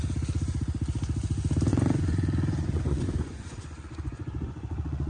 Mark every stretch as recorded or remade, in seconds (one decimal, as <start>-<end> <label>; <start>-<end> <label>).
0.0-1.7 recorded; 1.7-5.1 remade